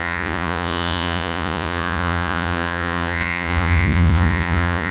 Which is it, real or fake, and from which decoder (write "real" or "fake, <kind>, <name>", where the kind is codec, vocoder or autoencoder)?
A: fake, vocoder, Vocos